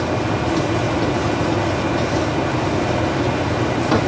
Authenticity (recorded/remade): recorded